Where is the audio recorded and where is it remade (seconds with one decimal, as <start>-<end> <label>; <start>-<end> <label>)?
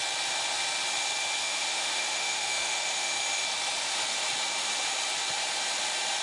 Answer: 0.0-1.4 recorded; 1.4-3.2 remade; 3.2-6.2 recorded